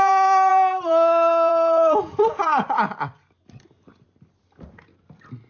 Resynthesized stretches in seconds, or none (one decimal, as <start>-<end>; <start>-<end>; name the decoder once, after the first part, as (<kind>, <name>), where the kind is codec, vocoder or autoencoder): 0.0-5.5 (vocoder, BigVGAN v2)